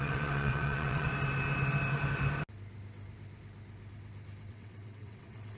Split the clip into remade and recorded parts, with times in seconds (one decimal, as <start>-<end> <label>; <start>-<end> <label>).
0.0-1.1 remade; 1.1-4.5 recorded; 4.5-5.6 remade